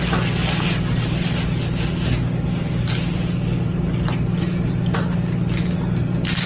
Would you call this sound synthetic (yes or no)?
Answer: no